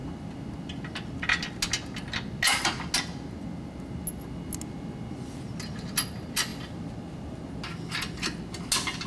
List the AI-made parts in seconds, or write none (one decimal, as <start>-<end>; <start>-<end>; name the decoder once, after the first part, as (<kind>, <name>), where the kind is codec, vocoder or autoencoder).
none